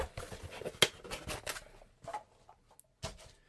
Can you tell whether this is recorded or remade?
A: recorded